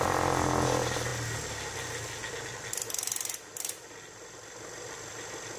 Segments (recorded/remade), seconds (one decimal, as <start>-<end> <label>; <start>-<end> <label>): 0.0-5.6 recorded